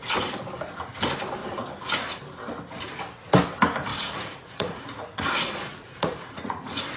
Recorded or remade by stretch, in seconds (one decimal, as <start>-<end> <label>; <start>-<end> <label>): 0.0-3.9 recorded; 3.9-7.0 remade